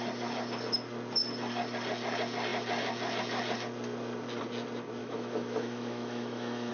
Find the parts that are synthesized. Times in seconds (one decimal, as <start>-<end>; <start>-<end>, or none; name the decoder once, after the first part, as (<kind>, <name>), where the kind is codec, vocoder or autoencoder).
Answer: 5.0-6.7 (autoencoder, DAC-VAE)